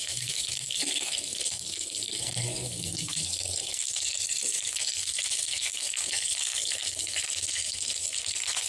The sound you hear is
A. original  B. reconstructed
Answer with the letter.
B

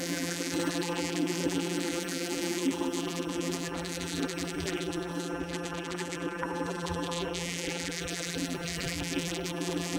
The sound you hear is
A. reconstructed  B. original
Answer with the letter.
A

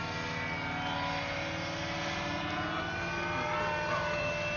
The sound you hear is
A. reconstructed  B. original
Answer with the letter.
B